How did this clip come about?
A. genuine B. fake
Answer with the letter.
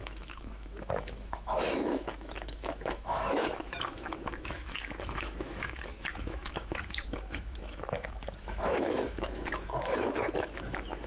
B